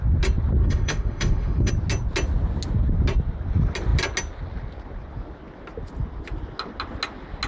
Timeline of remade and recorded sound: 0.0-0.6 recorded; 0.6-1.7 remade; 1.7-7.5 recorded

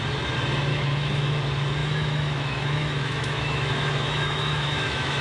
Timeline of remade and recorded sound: 0.0-0.7 recorded; 0.7-1.3 remade; 1.3-1.8 recorded; 1.8-5.2 remade

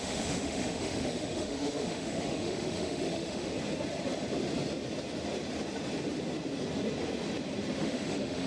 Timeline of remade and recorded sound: 0.0-3.5 remade; 3.5-7.8 recorded; 7.8-8.5 remade

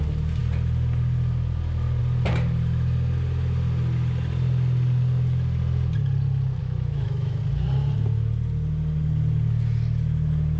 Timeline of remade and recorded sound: 0.0-6.6 recorded; 6.6-7.4 remade; 7.4-10.6 recorded

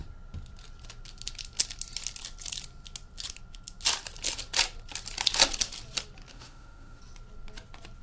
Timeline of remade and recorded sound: 0.0-6.3 recorded; 6.3-7.0 remade; 7.0-8.0 recorded